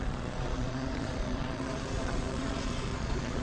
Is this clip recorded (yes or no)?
no